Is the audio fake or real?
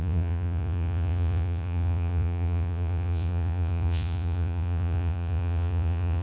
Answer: fake